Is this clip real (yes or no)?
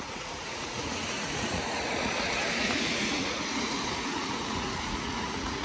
no